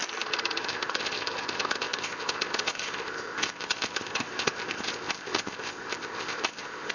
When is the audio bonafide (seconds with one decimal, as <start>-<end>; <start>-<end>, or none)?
0.0-0.6